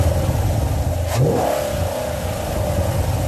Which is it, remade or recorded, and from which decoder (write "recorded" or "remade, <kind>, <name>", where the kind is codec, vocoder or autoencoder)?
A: recorded